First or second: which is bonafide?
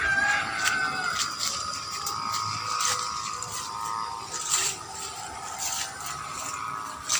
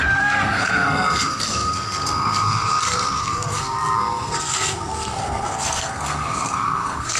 first